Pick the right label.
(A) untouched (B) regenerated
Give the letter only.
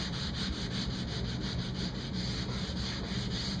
A